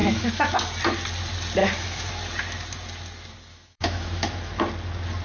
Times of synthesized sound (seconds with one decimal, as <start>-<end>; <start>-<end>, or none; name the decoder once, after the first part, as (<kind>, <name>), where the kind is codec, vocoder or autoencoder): 0.0-0.5 (autoencoder, DAC-VAE); 1.6-2.1; 3.5-4.6